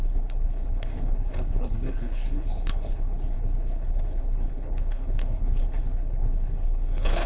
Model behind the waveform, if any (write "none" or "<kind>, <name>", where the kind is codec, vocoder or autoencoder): codec, HILCodec